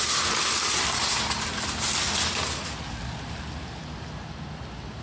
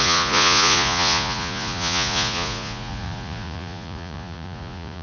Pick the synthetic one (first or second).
second